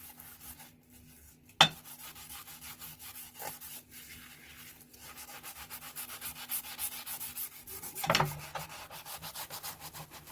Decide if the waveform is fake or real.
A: real